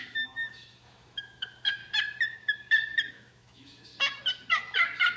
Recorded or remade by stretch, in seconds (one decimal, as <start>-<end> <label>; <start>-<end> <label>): 0.0-1.8 remade; 1.8-3.1 recorded; 3.1-3.9 remade; 3.9-5.2 recorded